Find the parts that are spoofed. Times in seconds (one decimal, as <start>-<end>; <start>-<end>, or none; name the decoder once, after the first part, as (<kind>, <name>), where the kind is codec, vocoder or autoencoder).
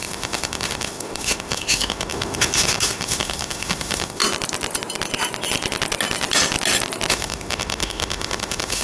0.0-4.2 (autoencoder, DAC-VAE); 7.1-8.8